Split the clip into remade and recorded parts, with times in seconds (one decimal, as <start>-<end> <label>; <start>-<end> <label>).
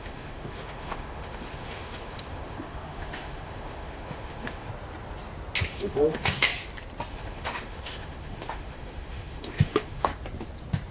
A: 0.0-4.7 remade; 4.7-5.7 recorded; 5.7-6.5 remade; 6.5-7.1 recorded; 7.1-10.1 remade; 10.1-10.9 recorded